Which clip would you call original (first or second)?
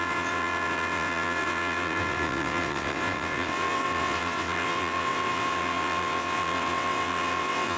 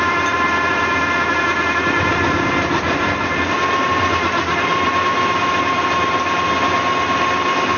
second